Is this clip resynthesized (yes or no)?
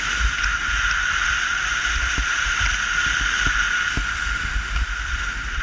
no